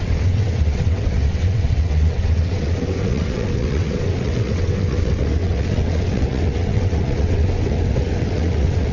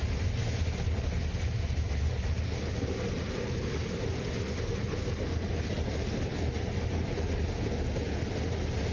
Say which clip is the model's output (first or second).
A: first